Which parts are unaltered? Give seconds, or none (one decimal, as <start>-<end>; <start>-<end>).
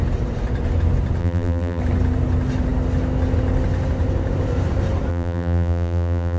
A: 0.0-1.2; 1.8-5.1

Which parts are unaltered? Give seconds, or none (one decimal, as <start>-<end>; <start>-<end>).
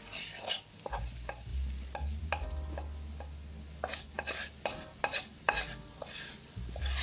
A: 0.0-7.0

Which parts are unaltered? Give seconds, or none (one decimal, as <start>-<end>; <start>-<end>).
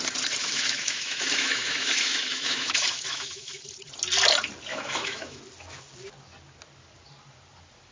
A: 0.0-0.4; 3.6-4.7; 5.4-7.9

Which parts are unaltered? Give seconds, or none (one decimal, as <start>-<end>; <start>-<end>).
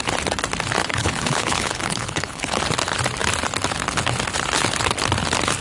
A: 0.0-0.8; 2.6-5.6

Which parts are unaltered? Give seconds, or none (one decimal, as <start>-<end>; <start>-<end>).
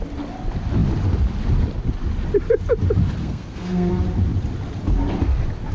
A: 0.0-3.2; 3.9-5.7